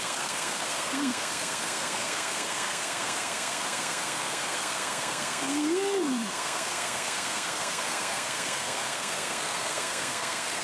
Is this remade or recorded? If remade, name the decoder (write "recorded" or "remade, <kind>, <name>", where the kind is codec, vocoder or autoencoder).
remade, codec, SNAC